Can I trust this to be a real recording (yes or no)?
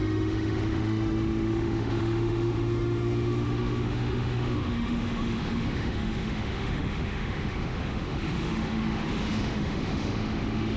no